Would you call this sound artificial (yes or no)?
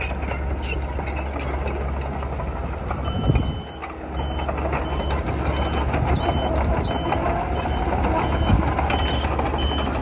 no